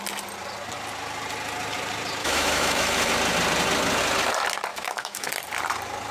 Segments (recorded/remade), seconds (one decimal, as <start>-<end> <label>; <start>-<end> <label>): 0.0-2.2 recorded; 2.2-3.1 remade; 3.1-4.7 recorded; 4.7-5.3 remade; 5.3-6.1 recorded